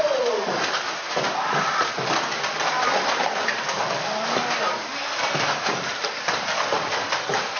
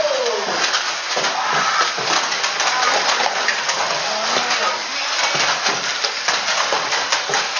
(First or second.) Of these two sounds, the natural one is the second